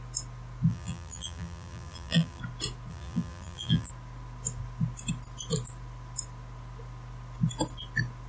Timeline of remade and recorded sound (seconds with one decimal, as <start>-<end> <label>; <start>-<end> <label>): 0.0-0.7 recorded; 0.7-2.4 remade; 2.4-2.9 recorded; 2.9-3.9 remade; 3.9-8.3 recorded